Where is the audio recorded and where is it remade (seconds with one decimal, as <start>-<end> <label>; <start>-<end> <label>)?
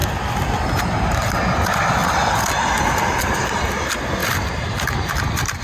0.0-5.6 recorded